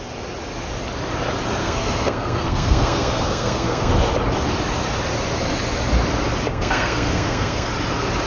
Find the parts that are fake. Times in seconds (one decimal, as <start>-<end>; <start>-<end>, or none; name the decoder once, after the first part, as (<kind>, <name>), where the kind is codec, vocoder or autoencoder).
1.6-3.9 (codec, SNAC); 6.5-7.7